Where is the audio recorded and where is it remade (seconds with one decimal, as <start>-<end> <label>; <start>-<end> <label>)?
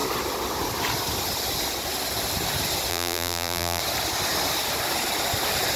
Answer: 0.0-2.9 recorded; 2.9-3.8 remade; 3.8-5.8 recorded